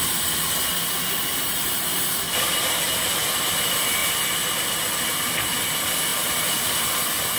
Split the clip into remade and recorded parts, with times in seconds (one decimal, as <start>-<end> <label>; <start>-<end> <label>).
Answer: 0.0-1.3 recorded; 1.3-2.5 remade; 2.5-6.1 recorded; 6.1-6.7 remade; 6.7-7.4 recorded